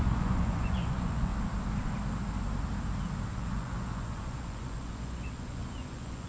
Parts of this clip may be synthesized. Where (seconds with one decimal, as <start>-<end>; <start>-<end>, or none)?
0.0-1.3; 3.3-6.3